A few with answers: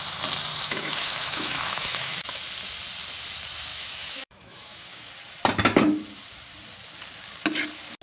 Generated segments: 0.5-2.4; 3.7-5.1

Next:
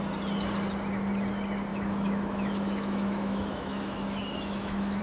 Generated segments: 1.7-5.0

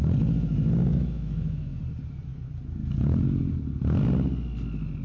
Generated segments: 0.9-1.8

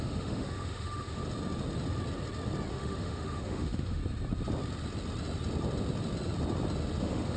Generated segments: 0.0-1.2; 2.7-4.0; 7.0-7.4

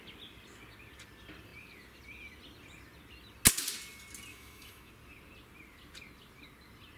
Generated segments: 4.3-4.9

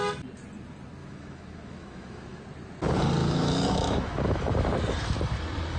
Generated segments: 1.0-2.4; 3.2-4.7

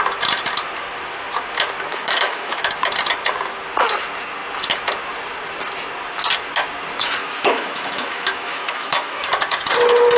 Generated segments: 1.9-2.6; 7.2-9.3